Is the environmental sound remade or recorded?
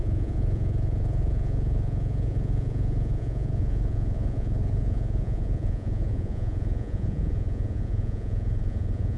remade